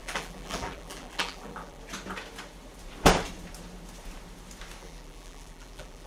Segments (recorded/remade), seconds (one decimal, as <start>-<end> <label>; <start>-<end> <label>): 0.0-1.8 remade; 1.8-4.8 recorded; 4.8-6.1 remade